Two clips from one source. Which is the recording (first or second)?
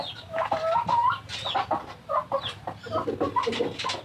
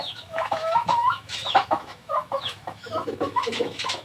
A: first